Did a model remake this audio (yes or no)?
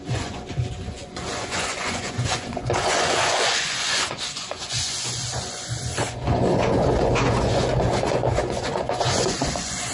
yes